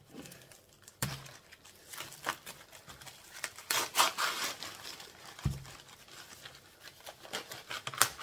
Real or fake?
fake